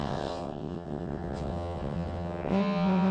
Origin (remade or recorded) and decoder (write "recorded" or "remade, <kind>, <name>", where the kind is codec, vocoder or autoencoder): remade, vocoder, WaveNeXt